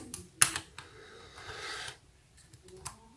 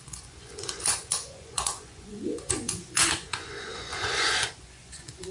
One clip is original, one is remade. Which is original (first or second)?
first